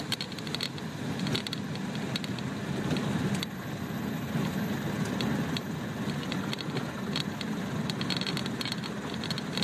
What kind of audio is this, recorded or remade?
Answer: recorded